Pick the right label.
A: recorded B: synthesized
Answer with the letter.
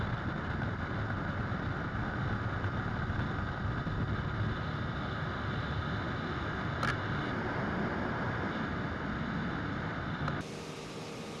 A